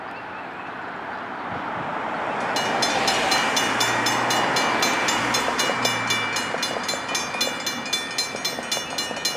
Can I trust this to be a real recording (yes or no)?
yes